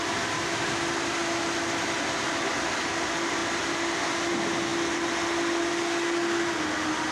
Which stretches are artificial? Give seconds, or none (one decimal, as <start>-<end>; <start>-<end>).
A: none